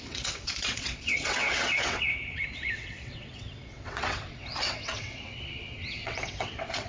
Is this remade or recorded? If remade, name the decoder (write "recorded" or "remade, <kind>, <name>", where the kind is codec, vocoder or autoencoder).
remade, vocoder, WaveNeXt